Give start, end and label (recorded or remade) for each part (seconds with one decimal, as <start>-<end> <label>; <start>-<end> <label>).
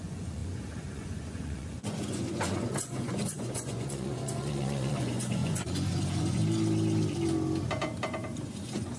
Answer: 0.0-6.4 remade; 6.4-8.4 recorded; 8.4-9.0 remade